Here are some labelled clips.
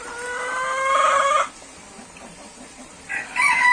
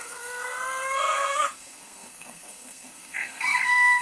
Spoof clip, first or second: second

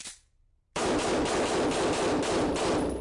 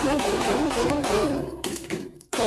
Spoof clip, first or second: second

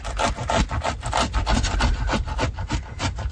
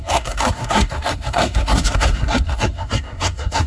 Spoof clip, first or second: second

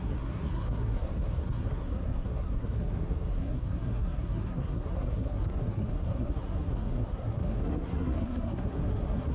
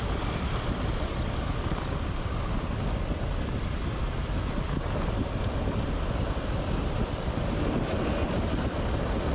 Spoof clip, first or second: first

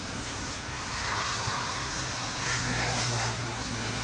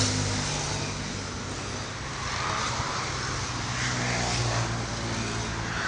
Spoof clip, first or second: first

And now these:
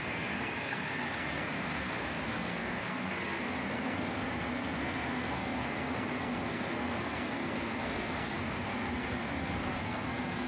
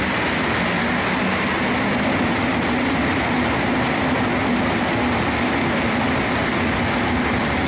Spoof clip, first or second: first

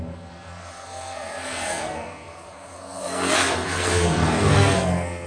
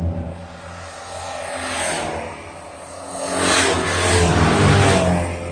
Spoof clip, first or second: first